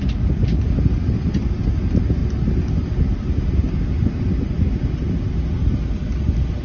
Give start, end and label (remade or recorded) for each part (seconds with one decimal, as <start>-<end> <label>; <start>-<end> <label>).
0.0-6.6 recorded